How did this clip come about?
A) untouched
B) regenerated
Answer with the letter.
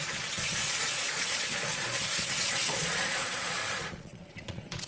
B